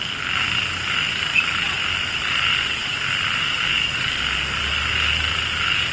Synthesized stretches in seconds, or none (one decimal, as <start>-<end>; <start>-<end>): none